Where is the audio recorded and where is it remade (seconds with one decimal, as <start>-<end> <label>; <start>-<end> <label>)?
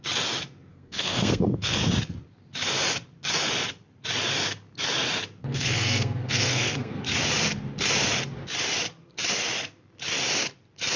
0.0-0.7 recorded; 0.7-1.9 remade; 1.9-5.4 recorded; 5.4-7.0 remade; 7.0-11.0 recorded